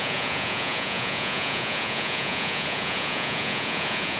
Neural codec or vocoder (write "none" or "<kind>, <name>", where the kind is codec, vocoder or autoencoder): vocoder, Vocos